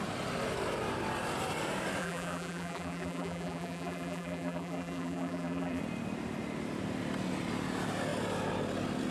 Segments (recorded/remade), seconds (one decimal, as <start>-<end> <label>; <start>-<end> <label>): 0.0-2.0 recorded; 2.0-5.8 remade; 5.8-9.1 recorded